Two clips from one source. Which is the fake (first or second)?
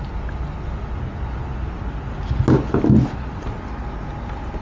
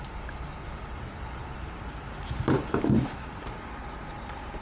second